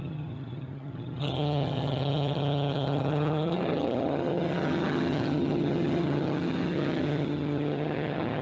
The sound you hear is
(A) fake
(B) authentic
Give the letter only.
A